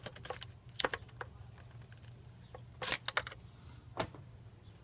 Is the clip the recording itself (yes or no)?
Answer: yes